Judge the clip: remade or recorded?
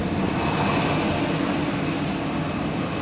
recorded